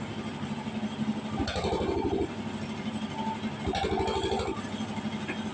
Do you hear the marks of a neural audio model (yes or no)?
no